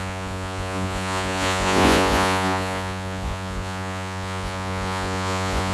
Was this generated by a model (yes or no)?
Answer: yes